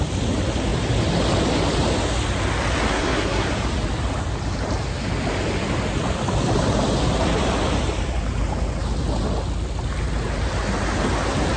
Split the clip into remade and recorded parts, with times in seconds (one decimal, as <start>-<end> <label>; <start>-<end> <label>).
0.0-2.9 recorded; 2.9-3.5 remade; 3.5-11.6 recorded